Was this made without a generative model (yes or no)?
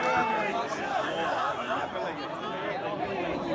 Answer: yes